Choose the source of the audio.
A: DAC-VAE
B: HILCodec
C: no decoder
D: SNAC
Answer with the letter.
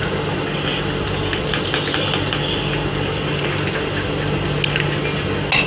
C